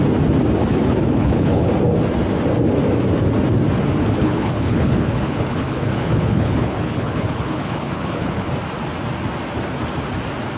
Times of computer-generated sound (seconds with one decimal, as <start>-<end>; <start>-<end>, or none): 0.7-1.7; 4.2-8.5